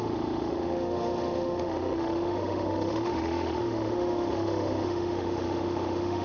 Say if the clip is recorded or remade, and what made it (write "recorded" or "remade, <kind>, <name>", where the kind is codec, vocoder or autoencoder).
remade, autoencoder, DAC-VAE